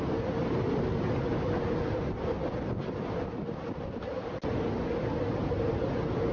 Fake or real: real